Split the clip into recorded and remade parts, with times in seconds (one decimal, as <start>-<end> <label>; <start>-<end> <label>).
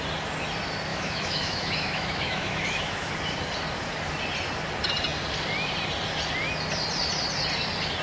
0.0-0.9 recorded; 0.9-3.1 remade; 3.1-8.0 recorded